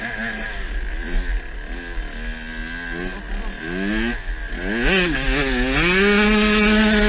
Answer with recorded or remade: recorded